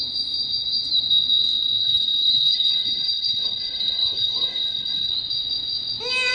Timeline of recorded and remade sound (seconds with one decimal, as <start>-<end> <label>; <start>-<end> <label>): 0.0-1.8 recorded; 1.8-5.1 remade; 5.1-6.3 recorded